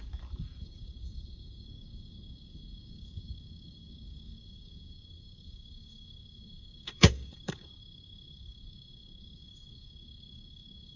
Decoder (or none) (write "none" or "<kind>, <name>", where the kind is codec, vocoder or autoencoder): codec, DAC